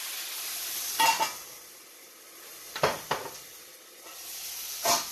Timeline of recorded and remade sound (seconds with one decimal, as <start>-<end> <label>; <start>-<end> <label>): 0.0-1.4 recorded; 1.4-4.5 remade; 4.5-5.1 recorded